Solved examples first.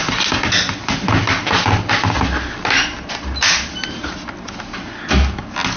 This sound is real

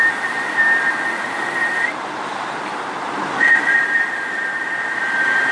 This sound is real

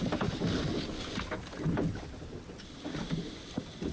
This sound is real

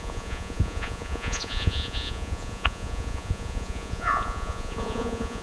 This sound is fake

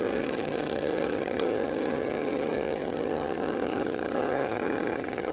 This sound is fake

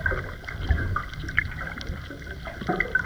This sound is fake